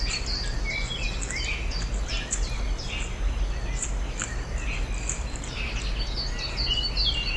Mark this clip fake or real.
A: real